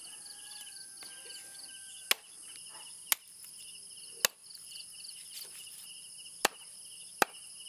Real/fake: real